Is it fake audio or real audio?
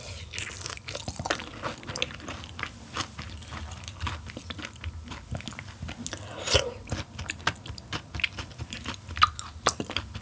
real